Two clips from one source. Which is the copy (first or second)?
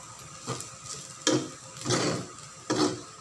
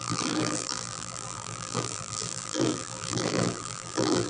second